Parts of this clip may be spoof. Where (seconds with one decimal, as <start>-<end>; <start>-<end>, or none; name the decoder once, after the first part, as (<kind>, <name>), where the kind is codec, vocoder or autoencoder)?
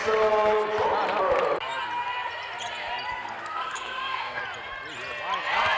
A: 3.1-4.4 (codec, SNAC)